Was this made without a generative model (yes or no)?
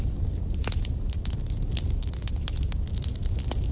yes